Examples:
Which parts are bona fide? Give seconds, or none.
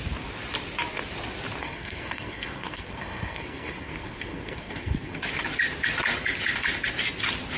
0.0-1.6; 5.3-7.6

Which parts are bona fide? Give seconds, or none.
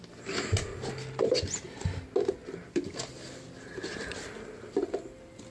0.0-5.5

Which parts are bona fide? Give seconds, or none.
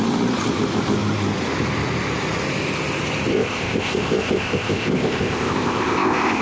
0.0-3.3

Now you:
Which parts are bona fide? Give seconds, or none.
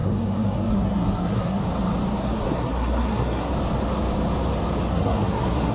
1.6-2.2; 3.5-4.9